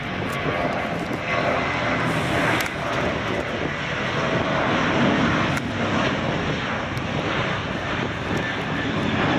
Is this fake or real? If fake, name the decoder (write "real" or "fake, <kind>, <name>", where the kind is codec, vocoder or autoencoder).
real